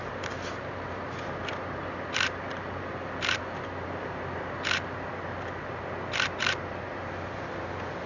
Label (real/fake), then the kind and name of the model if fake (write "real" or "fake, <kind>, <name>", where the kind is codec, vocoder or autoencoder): real